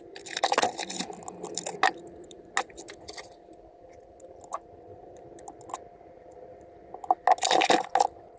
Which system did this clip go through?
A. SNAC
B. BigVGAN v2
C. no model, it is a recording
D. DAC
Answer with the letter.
C